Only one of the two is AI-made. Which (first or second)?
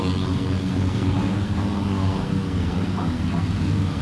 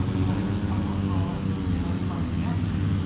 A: first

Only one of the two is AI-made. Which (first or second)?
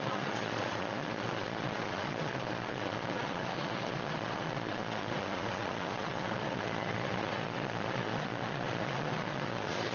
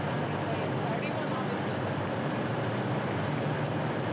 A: first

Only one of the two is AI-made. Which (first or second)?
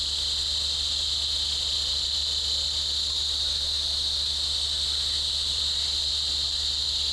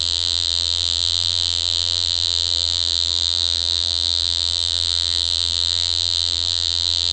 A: second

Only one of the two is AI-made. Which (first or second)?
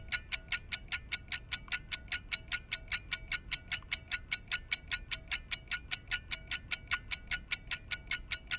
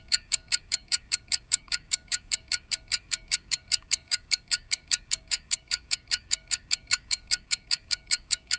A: second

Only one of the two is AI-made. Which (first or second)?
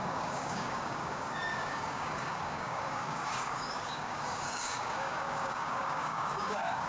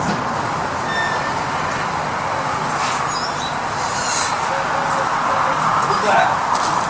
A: first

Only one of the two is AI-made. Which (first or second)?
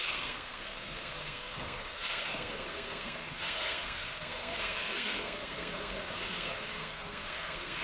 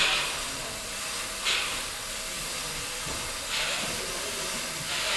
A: first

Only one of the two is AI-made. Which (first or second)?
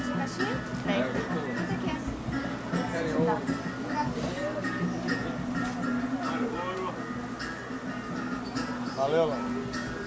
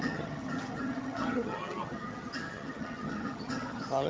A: second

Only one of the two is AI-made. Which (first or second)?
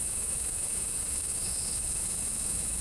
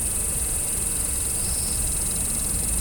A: first